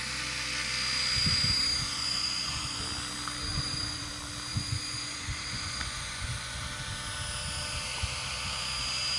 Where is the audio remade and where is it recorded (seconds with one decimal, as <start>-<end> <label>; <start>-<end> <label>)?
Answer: 0.0-1.9 recorded; 1.9-2.8 remade; 2.8-3.5 recorded; 3.5-4.1 remade; 4.1-4.5 recorded; 4.5-6.6 remade; 6.6-9.2 recorded